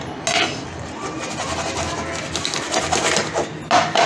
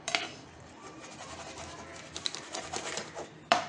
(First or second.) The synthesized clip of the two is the second